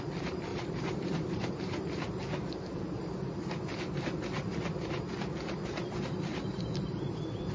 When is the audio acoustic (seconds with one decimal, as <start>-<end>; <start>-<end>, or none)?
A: 0.0-0.5; 4.0-7.5